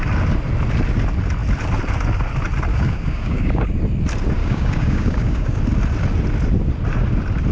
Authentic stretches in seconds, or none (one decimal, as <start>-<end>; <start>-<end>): 0.0-2.7; 3.7-4.4; 5.6-7.5